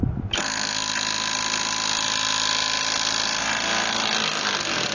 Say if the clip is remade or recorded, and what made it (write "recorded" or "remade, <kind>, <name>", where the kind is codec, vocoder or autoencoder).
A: recorded